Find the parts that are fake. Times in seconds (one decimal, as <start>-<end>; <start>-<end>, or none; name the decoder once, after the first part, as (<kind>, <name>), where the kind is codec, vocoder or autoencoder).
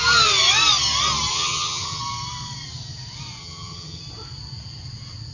1.3-2.0 (vocoder, HiFi-GAN); 3.4-4.0